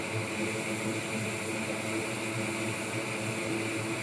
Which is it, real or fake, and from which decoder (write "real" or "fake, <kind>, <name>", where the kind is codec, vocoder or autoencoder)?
real